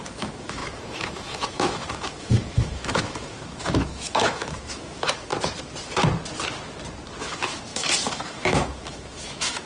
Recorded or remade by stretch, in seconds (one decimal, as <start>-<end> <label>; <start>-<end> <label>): 0.0-5.3 remade; 5.3-7.2 recorded; 7.2-9.7 remade